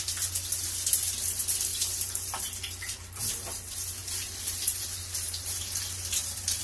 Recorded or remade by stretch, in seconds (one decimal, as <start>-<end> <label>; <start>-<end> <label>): 0.0-1.7 recorded; 1.7-3.2 remade; 3.2-4.0 recorded; 4.0-6.6 remade